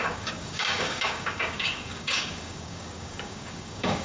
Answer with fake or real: fake